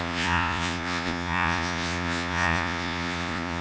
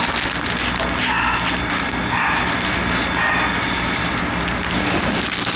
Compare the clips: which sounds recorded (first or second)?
second